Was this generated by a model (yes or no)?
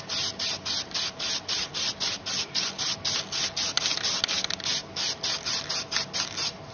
no